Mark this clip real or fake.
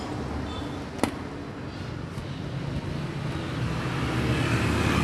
real